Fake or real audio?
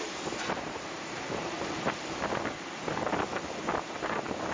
real